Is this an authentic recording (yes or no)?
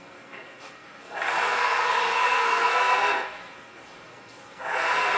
no